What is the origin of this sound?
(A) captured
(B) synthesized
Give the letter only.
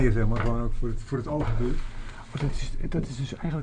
A